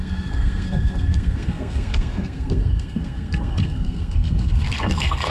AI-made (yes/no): yes